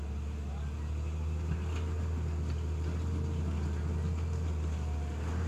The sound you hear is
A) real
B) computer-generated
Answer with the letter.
A